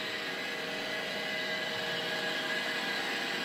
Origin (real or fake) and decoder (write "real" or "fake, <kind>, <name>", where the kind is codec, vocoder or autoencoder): real